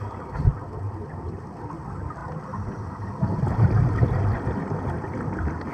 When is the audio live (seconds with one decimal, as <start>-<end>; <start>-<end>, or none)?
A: 0.0-5.7